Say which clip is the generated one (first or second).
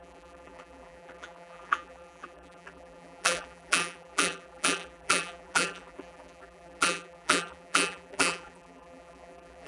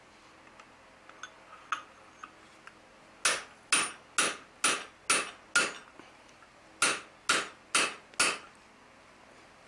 first